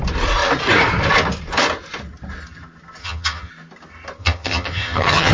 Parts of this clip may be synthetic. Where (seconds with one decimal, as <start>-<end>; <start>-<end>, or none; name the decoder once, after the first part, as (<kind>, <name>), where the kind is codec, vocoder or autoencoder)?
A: 3.0-3.5 (vocoder, HiFi-GAN); 4.2-5.3